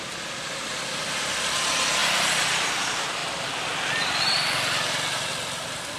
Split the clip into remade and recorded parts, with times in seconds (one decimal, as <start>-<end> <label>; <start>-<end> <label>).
0.0-6.0 recorded